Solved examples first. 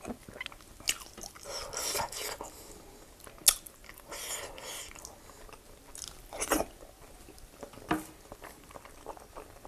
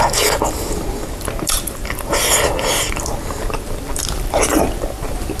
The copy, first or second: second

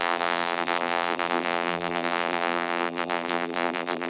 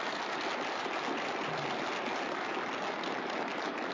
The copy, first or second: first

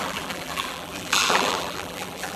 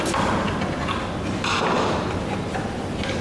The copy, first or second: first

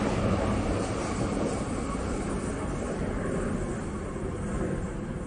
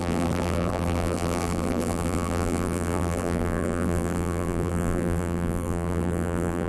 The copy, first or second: second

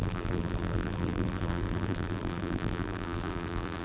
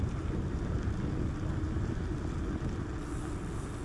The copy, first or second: first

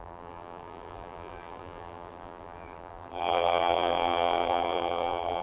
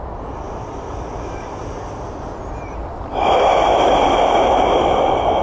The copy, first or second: first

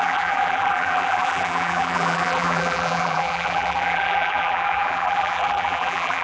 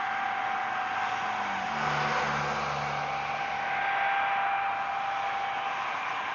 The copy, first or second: first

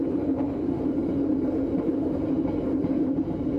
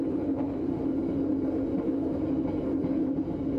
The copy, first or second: first